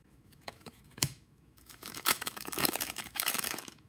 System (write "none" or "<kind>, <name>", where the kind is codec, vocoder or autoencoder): autoencoder, DAC-VAE